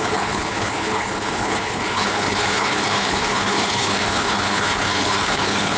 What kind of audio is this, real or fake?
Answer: fake